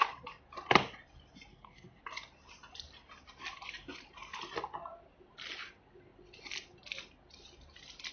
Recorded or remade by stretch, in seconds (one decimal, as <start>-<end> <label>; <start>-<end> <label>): 0.0-1.5 recorded; 1.5-2.0 remade; 2.0-8.1 recorded